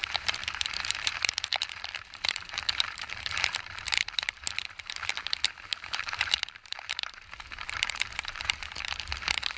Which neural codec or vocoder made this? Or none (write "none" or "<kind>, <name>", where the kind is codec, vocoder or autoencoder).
vocoder, BigVGAN v2